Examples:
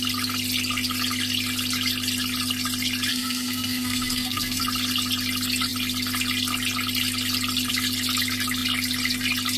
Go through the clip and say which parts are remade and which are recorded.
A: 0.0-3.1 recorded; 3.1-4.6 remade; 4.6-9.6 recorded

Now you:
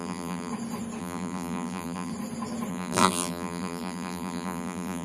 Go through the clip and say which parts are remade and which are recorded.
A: 0.0-0.5 remade; 0.5-1.0 recorded; 1.0-2.1 remade; 2.1-2.7 recorded; 2.7-5.0 remade

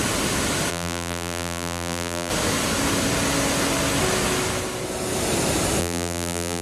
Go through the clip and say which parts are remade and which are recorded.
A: 0.0-0.7 recorded; 0.7-2.3 remade; 2.3-5.8 recorded; 5.8-6.6 remade

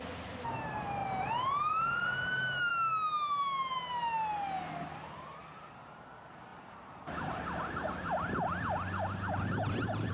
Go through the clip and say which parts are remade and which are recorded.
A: 0.0-1.0 remade; 1.0-1.8 recorded; 1.8-2.7 remade; 2.7-5.2 recorded; 5.2-10.1 remade